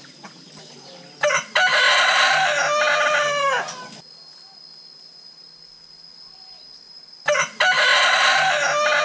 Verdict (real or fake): real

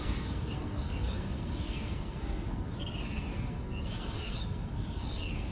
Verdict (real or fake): fake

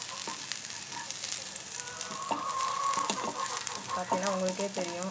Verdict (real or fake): real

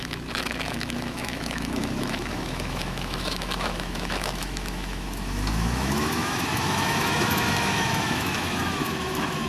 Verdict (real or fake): fake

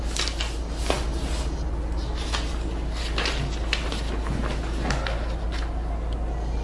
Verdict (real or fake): real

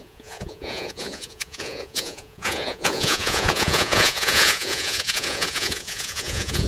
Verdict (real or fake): fake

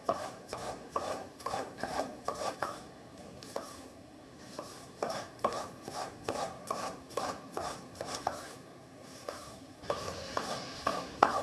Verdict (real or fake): fake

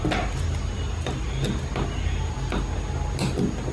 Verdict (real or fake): real